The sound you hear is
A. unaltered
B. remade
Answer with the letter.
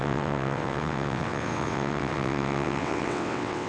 B